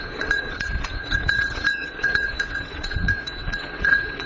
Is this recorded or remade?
remade